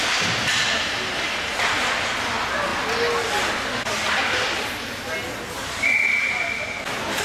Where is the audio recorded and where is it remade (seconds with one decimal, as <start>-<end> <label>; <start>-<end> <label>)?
0.0-7.2 recorded